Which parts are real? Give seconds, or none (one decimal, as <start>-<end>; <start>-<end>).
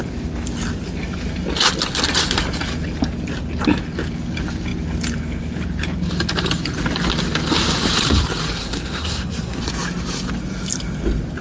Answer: 0.0-8.6; 9.6-11.4